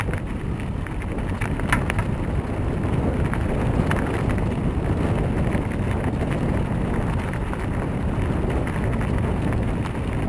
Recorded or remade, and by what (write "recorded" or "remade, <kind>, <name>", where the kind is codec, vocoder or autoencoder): recorded